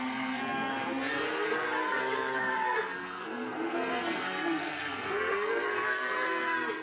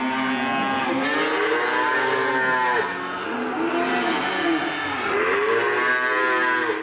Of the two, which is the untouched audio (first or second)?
second